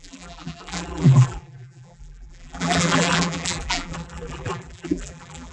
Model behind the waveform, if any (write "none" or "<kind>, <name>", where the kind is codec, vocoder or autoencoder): vocoder, BigVGAN v2